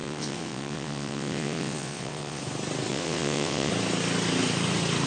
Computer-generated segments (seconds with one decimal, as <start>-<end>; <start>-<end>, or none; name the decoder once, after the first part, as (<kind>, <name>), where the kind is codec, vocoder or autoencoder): 0.0-2.4 (vocoder, WaveNeXt); 2.9-3.7